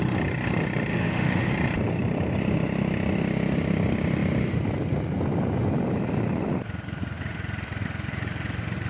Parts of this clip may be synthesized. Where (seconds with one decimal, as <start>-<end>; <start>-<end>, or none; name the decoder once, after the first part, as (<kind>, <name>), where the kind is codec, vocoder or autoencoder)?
0.9-1.5 (autoencoder, DAC-VAE)